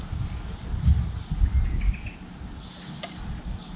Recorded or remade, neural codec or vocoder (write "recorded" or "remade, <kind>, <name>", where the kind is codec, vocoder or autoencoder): recorded